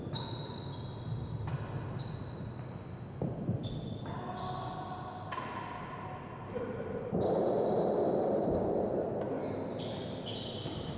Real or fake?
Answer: real